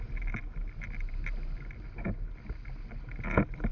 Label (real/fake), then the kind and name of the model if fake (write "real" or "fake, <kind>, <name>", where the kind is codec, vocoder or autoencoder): real